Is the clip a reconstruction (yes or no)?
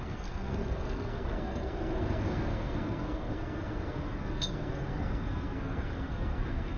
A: yes